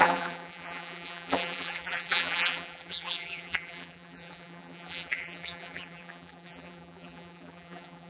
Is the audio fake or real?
fake